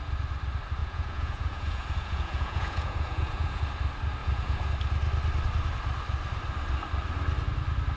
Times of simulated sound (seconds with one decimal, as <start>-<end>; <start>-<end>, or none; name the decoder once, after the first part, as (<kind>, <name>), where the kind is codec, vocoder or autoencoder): 0.8-3.6 (vocoder, Vocos); 4.2-4.7